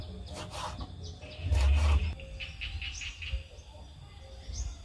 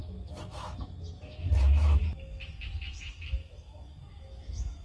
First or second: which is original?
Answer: first